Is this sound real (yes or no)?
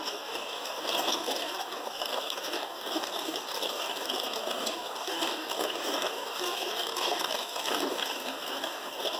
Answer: no